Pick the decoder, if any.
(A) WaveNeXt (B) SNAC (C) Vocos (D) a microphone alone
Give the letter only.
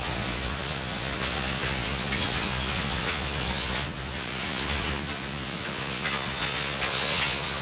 C